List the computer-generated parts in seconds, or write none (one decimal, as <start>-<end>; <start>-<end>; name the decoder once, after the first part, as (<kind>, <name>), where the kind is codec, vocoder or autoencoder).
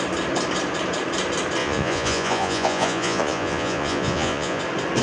1.6-4.6 (vocoder, Vocos)